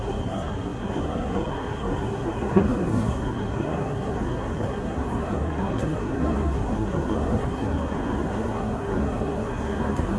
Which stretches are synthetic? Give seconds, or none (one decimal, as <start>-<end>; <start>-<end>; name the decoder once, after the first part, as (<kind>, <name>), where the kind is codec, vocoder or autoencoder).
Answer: 0.0-10.2 (codec, SNAC)